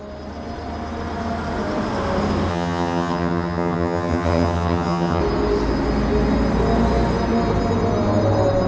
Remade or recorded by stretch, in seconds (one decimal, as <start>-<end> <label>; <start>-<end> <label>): 0.0-2.5 recorded; 2.5-5.2 remade; 5.2-8.7 recorded